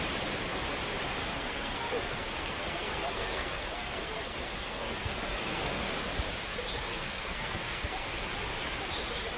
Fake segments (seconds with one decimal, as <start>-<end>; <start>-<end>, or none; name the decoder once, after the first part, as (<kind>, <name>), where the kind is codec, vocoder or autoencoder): 1.2-5.9 (codec, SNAC); 6.9-8.1